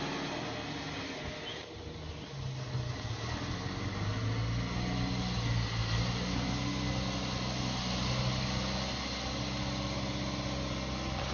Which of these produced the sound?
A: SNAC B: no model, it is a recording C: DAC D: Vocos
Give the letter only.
B